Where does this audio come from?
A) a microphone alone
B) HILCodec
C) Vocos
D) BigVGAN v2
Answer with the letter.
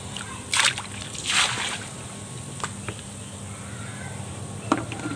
D